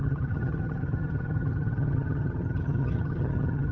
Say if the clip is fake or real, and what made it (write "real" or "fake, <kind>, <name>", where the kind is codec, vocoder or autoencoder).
fake, vocoder, HiFi-GAN